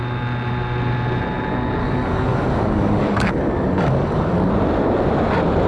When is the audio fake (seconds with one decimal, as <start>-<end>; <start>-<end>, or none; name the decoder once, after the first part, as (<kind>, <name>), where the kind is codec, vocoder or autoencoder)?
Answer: 1.8-4.5 (codec, DAC)